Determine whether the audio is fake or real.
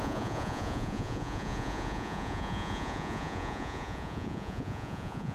fake